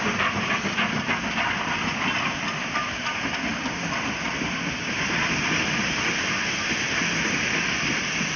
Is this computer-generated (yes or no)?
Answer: no